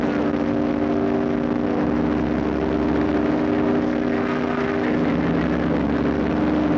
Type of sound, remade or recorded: recorded